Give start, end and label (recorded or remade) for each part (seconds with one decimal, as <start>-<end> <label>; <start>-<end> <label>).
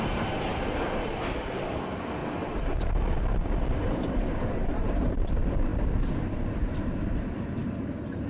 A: 0.0-2.2 recorded; 2.2-3.0 remade; 3.0-3.8 recorded; 3.8-5.0 remade; 5.0-8.3 recorded